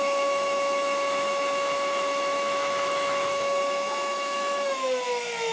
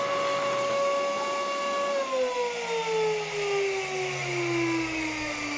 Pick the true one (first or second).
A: second